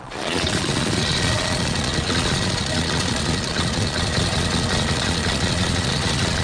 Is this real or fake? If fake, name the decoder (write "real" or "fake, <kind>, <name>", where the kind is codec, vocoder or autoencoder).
fake, vocoder, Vocos